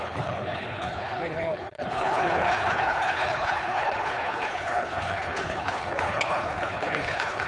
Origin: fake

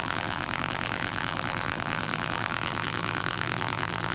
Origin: fake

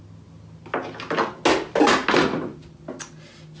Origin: real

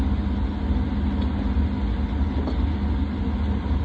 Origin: real